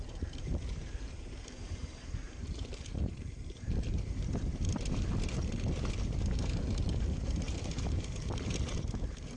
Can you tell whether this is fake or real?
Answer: fake